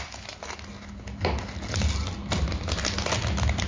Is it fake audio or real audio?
real